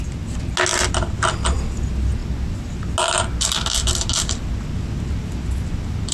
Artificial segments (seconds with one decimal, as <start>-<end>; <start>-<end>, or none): none